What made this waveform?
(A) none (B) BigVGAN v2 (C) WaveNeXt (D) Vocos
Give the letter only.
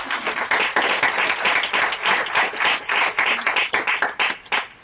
A